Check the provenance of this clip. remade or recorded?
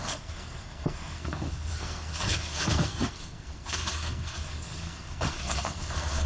remade